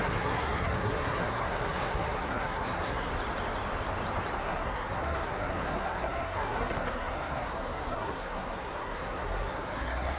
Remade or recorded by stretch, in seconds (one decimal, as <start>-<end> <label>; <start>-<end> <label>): 0.0-3.1 remade; 3.1-4.4 recorded; 4.4-10.2 remade